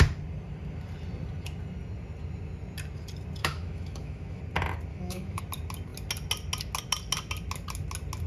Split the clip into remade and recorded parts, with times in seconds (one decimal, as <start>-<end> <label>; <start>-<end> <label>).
0.0-3.4 recorded; 3.4-4.4 remade; 4.4-4.9 recorded; 4.9-5.4 remade; 5.4-8.3 recorded